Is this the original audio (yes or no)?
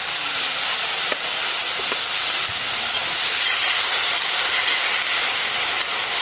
yes